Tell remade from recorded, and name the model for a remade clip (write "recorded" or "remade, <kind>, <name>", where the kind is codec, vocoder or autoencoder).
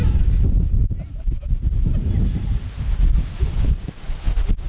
remade, vocoder, BigVGAN v2